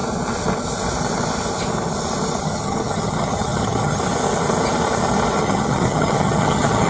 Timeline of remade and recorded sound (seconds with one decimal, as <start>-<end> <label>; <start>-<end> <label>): 0.0-2.4 recorded; 2.4-4.0 remade; 4.0-5.4 recorded; 5.4-6.9 remade